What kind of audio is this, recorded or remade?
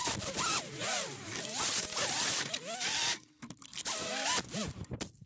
recorded